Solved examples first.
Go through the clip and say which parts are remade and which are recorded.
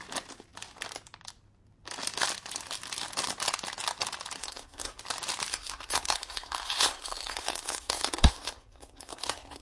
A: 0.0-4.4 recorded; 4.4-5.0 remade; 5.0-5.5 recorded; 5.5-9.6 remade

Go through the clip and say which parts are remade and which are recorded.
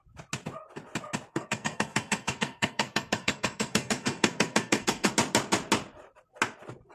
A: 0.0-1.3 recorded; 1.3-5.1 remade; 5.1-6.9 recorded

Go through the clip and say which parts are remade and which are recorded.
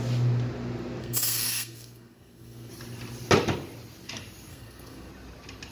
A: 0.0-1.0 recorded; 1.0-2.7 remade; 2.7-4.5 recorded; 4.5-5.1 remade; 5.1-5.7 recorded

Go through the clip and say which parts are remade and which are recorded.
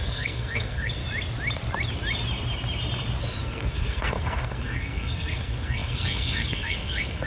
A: 0.0-1.0 remade; 1.0-3.2 recorded; 3.2-7.3 remade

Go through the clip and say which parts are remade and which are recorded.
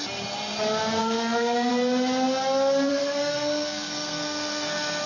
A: 0.0-1.0 recorded; 1.0-1.7 remade; 1.7-2.9 recorded; 2.9-5.1 remade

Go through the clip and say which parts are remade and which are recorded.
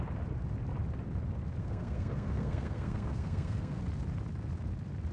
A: 0.0-1.6 recorded; 1.6-3.8 remade; 3.8-5.1 recorded